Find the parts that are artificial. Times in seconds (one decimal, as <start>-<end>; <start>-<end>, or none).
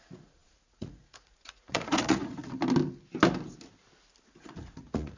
0.0-2.4; 4.2-5.2